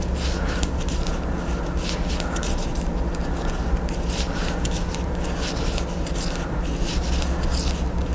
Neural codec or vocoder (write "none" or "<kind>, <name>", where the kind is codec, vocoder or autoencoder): none